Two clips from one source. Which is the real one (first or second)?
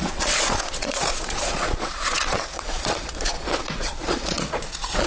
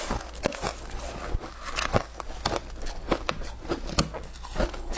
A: second